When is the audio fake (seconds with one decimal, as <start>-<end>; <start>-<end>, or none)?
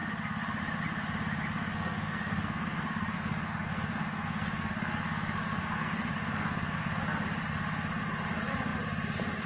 1.7-7.0